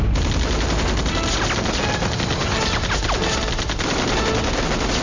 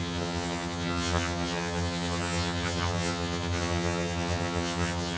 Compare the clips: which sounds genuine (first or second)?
first